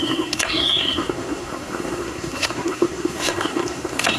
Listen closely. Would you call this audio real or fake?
fake